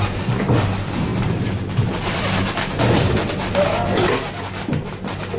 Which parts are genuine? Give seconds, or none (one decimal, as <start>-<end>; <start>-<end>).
0.0-1.1; 4.3-5.4